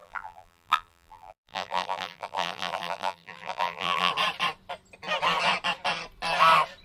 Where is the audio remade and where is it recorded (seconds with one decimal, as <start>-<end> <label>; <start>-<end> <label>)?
0.0-4.1 remade; 4.1-6.8 recorded